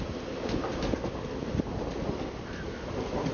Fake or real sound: real